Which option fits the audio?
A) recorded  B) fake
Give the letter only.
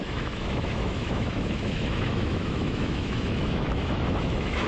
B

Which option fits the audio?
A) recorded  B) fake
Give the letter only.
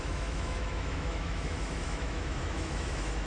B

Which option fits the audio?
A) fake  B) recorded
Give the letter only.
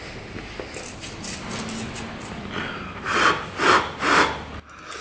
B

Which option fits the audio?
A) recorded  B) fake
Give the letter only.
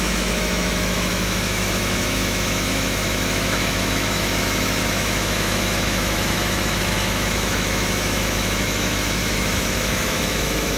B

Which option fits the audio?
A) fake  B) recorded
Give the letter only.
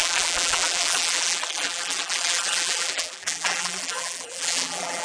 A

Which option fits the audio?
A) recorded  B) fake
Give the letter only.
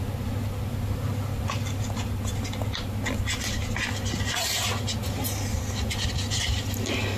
A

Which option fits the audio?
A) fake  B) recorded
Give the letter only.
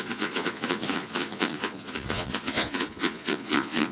A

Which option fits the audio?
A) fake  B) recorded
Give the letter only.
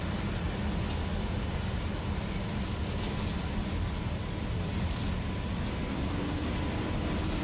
B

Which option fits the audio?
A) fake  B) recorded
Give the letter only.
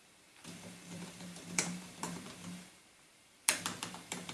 A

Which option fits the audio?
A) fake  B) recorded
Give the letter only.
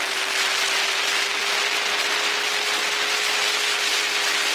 B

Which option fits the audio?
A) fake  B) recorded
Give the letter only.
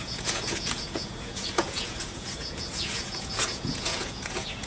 A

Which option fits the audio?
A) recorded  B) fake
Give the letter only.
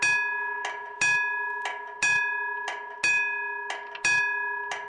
A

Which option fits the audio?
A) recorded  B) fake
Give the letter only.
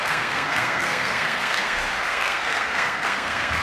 B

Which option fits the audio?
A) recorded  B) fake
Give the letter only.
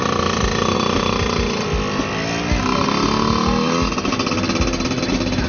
A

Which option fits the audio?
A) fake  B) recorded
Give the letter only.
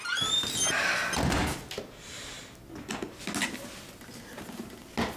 B